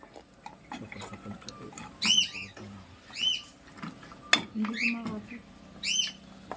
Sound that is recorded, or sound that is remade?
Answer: recorded